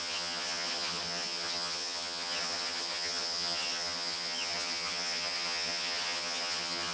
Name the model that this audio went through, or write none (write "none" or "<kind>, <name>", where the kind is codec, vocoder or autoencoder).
vocoder, HiFi-GAN